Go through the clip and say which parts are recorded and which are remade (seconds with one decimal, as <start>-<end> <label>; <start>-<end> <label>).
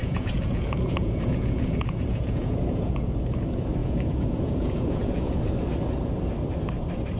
0.0-3.2 remade; 3.2-3.8 recorded; 3.8-5.5 remade; 5.5-7.2 recorded